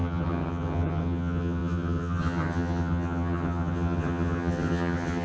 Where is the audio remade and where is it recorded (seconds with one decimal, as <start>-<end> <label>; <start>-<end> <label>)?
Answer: 0.0-5.2 remade